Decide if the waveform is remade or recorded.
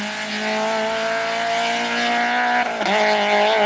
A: recorded